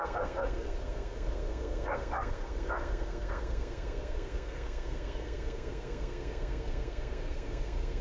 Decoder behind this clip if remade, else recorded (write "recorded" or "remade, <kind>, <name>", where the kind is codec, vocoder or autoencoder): remade, codec, SNAC